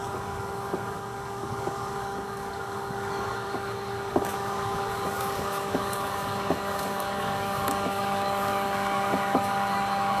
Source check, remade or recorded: remade